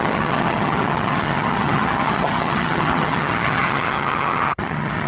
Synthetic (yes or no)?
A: yes